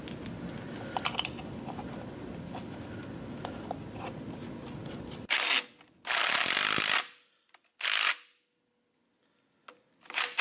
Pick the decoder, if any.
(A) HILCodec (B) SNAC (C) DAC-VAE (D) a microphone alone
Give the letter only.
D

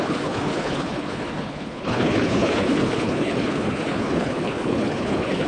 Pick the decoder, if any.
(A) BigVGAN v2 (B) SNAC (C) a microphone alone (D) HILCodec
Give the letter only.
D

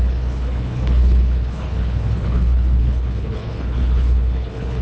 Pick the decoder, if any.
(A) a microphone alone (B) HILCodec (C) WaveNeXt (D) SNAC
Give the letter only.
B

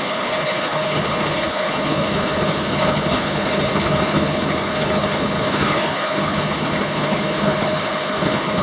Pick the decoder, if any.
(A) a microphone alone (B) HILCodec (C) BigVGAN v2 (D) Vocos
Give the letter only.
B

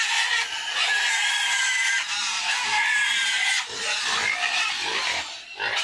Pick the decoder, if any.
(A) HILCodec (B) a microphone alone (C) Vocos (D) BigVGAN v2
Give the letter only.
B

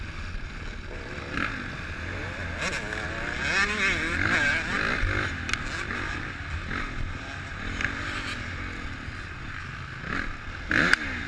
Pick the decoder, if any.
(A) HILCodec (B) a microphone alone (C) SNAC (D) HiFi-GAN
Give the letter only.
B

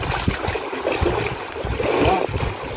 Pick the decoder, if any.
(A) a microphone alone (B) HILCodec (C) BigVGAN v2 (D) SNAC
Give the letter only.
A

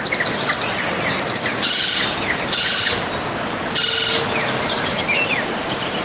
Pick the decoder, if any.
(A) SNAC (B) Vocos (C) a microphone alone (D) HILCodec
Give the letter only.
C